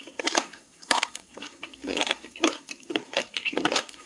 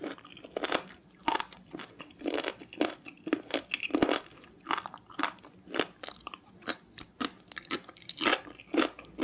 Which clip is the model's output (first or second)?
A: first